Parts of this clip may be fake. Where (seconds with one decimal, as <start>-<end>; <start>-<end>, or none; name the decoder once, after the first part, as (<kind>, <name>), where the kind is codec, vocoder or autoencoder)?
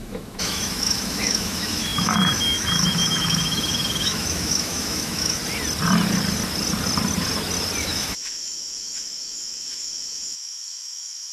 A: 0.0-5.4 (autoencoder, DAC-VAE); 7.8-11.3